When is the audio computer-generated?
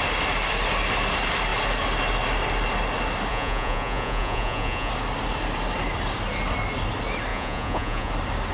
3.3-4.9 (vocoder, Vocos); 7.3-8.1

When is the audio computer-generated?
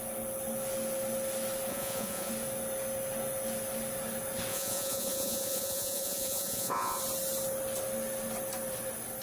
1.7-2.3 (vocoder, Vocos); 4.5-7.0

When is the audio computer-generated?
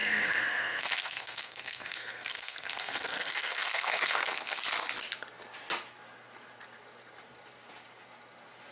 0.0-4.6 (codec, SNAC)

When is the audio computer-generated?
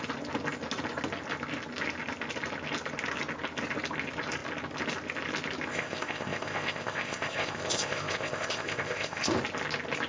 5.7-9.3 (codec, ZipCodec)